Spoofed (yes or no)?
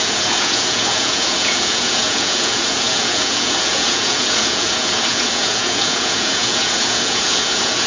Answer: yes